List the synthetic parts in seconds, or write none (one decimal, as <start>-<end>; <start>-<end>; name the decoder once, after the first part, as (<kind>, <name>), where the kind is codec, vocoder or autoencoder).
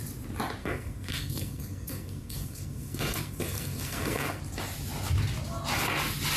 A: 0.6-4.4 (codec, SNAC)